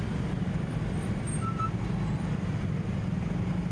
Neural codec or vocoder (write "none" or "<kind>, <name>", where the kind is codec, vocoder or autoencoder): none